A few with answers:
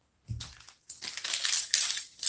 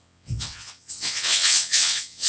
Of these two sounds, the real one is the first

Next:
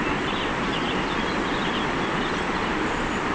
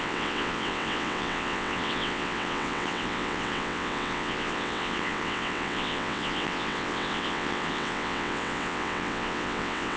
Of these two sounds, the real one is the first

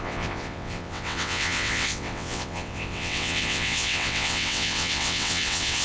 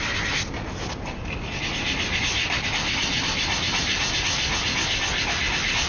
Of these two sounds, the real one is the second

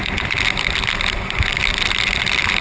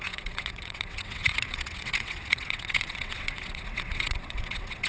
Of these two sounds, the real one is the first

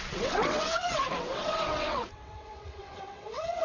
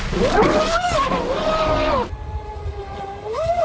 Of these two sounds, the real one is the second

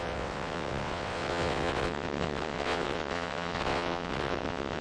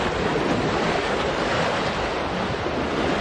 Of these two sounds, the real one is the second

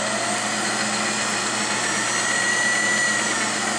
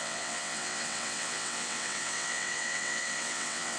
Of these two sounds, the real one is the first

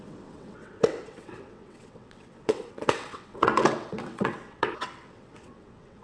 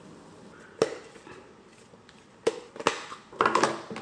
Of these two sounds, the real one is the second